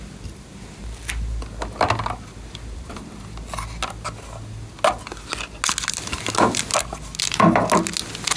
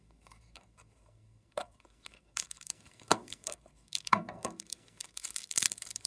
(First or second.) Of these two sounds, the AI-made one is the second